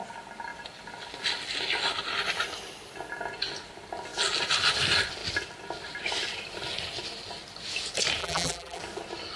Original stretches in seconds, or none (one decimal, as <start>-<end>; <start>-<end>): 0.0-8.2; 8.8-9.4